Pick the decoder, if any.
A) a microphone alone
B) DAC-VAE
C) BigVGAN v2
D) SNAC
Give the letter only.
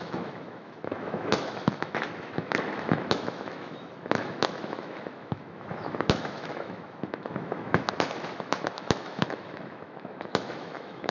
B